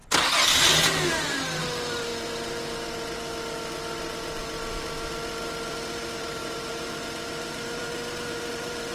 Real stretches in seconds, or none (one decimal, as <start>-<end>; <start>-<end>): 0.0-1.6; 2.1-5.7